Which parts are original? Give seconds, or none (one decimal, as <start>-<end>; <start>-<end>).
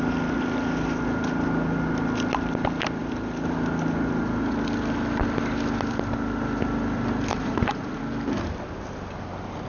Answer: 0.0-7.3; 8.0-9.7